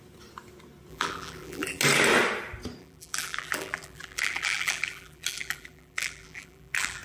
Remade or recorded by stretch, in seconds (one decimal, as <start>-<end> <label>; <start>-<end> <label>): 0.0-0.9 recorded; 0.9-1.8 remade; 1.8-2.8 recorded; 2.8-7.0 remade